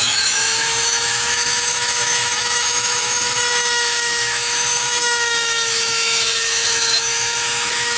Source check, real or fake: fake